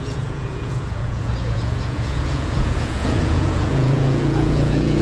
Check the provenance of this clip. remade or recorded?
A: remade